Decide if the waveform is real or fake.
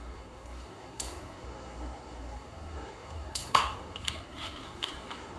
fake